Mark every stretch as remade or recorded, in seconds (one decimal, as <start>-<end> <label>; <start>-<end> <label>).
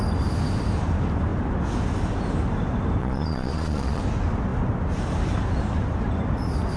0.0-3.0 recorded; 3.0-4.0 remade; 4.0-6.8 recorded